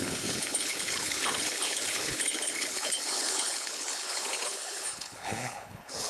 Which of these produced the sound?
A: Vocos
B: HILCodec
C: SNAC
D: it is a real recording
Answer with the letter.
B